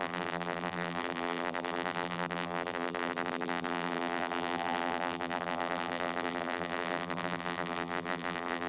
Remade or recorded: remade